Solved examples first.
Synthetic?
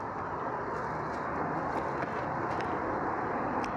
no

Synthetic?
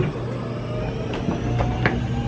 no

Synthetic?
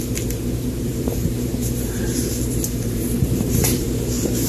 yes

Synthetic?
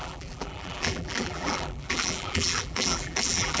yes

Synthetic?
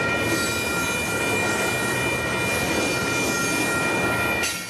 no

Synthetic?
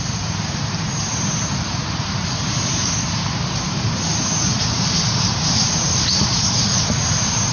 yes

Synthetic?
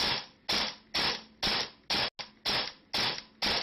no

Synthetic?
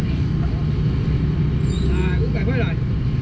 no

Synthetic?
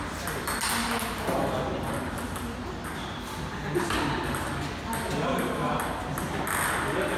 no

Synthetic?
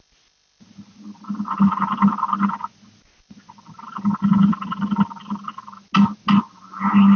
no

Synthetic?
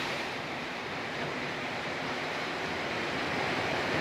yes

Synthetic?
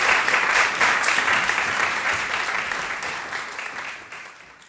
yes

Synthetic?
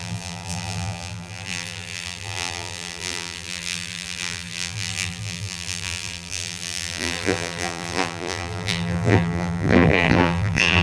yes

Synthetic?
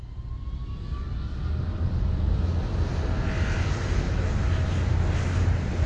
no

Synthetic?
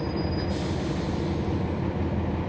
no